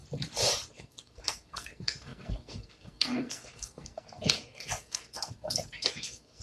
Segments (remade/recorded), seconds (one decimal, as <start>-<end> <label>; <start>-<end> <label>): 0.0-0.7 recorded; 0.7-6.4 remade